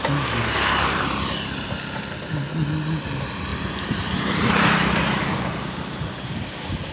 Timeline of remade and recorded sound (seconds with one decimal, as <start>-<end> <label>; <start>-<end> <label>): 0.0-3.5 recorded; 3.5-6.4 remade; 6.4-6.9 recorded